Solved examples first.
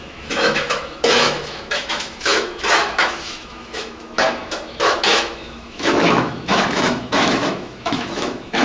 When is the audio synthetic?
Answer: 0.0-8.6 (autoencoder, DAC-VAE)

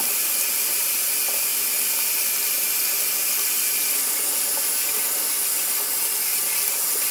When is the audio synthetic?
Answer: none

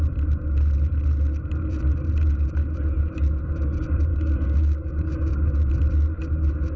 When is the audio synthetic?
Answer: 4.1-5.3 (codec, DAC)

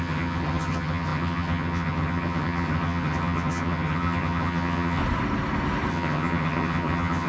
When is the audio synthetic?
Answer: 0.0-5.0 (vocoder, HiFi-GAN); 5.9-7.3

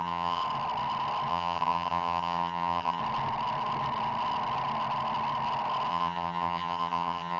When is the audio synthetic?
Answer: 0.0-0.4 (vocoder, HiFi-GAN); 1.3-3.0; 5.9-7.4